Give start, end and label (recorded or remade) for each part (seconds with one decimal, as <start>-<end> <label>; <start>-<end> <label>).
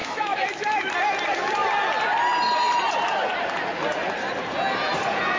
0.0-0.9 remade; 0.9-5.4 recorded